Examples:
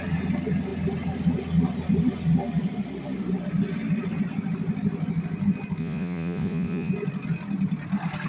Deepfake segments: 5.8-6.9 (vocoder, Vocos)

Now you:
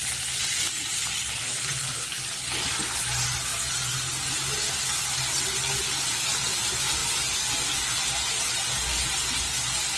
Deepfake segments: none

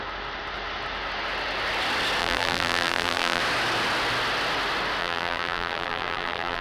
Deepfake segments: 2.2-3.4 (vocoder, BigVGAN v2); 5.0-6.6

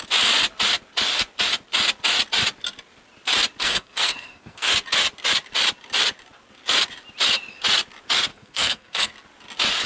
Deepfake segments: 3.6-4.7 (codec, SNAC); 8.3-9.1

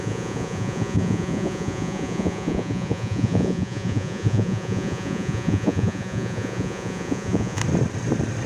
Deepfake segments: 0.0-7.6 (vocoder, Vocos)

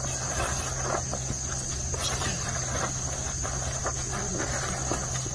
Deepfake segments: 2.0-2.7 (vocoder, BigVGAN v2)

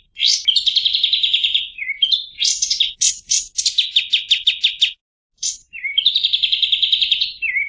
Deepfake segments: none